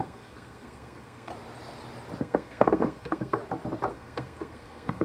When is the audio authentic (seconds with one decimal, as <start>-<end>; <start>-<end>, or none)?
1.3-2.2; 3.4-3.9